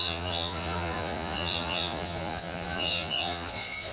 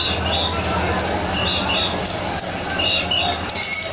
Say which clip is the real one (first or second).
second